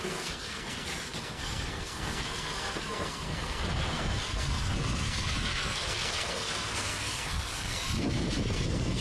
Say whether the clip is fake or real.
fake